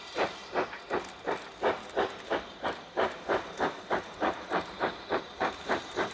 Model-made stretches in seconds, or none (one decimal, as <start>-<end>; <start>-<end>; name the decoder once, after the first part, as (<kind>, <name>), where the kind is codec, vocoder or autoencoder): 0.0-0.4 (vocoder, BigVGAN v2); 3.9-6.1